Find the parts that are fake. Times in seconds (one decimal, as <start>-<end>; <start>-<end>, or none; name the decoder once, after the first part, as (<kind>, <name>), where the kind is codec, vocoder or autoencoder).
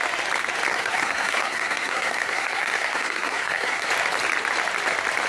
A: 0.7-3.9 (codec, SNAC)